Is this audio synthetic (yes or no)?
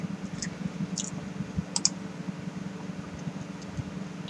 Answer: no